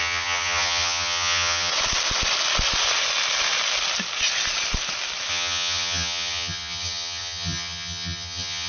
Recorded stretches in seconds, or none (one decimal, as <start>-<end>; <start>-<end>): 1.7-5.3